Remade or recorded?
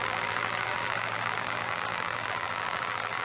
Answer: remade